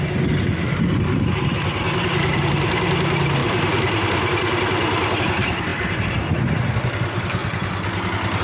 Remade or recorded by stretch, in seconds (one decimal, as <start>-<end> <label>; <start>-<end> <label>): 0.0-3.4 recorded; 3.4-5.2 remade; 5.2-8.4 recorded